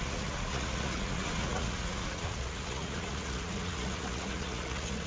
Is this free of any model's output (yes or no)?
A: no